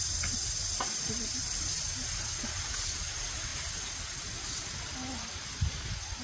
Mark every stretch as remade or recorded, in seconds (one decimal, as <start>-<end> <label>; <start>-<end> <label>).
0.0-6.2 recorded